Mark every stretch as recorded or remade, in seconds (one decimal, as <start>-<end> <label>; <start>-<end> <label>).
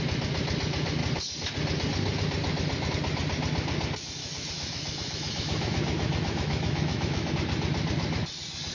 0.0-4.2 recorded; 4.2-7.3 remade; 7.3-8.7 recorded